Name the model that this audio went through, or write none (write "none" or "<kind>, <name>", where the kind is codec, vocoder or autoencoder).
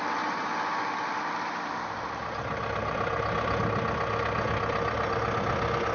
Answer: none